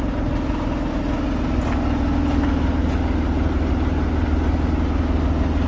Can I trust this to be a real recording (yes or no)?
yes